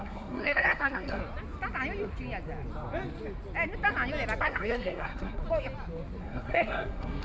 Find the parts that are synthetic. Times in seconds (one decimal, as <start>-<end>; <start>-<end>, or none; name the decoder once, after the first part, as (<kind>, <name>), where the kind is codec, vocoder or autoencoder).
0.0-1.2 (codec, SNAC); 4.4-5.4; 6.2-7.2